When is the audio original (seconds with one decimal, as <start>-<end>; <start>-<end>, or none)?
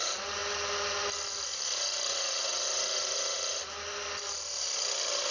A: 0.0-5.3